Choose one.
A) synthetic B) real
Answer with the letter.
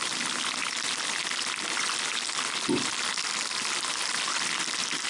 B